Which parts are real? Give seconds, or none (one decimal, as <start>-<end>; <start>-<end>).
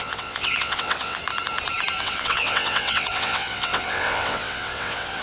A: 1.2-2.0